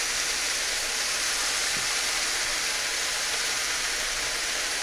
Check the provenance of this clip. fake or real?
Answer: fake